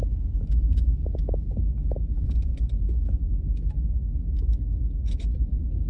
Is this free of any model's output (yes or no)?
no